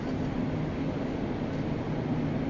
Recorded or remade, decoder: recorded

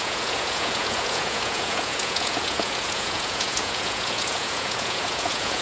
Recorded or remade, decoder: remade, vocoder, Vocos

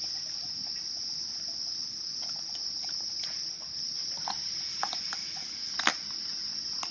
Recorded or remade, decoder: recorded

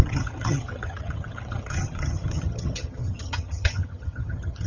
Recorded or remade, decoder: remade, vocoder, HiFi-GAN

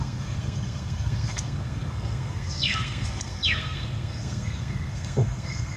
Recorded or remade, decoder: remade, codec, SNAC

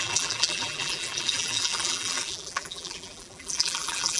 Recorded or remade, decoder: remade, vocoder, BigVGAN v2